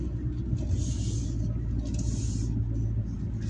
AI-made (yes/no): no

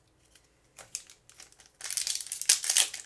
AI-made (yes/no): no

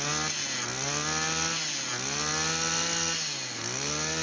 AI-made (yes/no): no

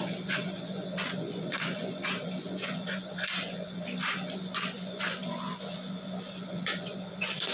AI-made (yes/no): yes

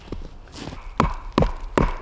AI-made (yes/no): no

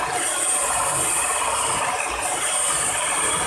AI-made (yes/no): no